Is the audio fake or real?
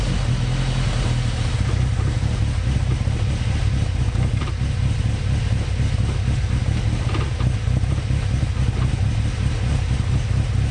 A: real